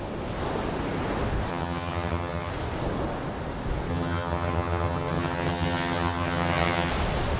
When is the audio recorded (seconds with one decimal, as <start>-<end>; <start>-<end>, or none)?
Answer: 0.0-1.5; 2.5-3.9; 6.9-7.4